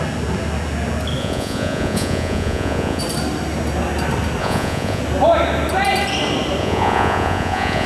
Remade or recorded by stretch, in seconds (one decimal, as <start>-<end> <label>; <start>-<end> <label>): 0.0-1.2 recorded; 1.2-3.0 remade; 3.0-4.4 recorded; 4.4-5.0 remade; 5.0-6.6 recorded; 6.6-7.9 remade